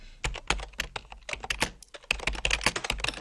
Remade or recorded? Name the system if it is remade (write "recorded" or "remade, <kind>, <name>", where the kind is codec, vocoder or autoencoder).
recorded